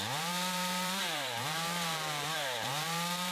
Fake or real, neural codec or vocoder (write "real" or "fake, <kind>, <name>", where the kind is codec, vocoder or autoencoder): fake, vocoder, BigVGAN v2